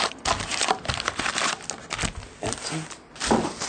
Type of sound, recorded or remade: recorded